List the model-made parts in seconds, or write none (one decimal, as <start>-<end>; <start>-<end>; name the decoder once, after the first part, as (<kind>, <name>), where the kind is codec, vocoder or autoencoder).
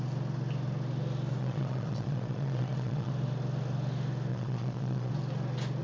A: 1.4-3.1 (vocoder, Vocos); 4.3-5.1